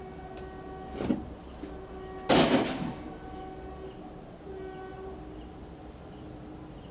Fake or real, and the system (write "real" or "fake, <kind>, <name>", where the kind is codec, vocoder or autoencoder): real